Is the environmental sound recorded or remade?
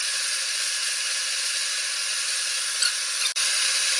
recorded